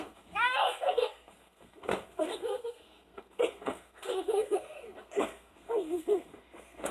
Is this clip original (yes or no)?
no